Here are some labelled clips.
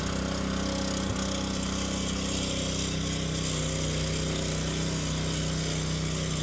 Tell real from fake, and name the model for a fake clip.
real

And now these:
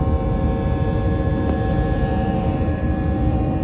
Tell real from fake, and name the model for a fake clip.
fake, vocoder, BigVGAN v2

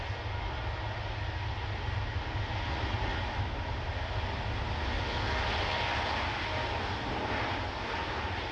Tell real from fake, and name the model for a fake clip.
real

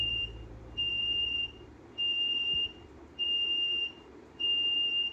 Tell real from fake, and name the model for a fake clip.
fake, vocoder, BigVGAN v2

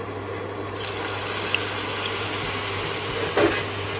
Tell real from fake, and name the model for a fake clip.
real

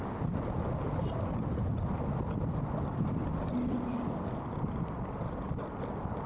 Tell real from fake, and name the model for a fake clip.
real